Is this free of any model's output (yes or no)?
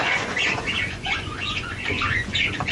no